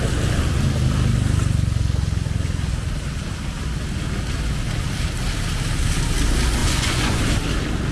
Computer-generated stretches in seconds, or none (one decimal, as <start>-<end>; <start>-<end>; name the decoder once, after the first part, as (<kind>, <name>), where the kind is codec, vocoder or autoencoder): 6.6-7.2 (vocoder, Vocos)